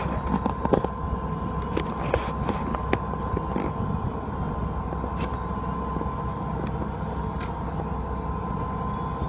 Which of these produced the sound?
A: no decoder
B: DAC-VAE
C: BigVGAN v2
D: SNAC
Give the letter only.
A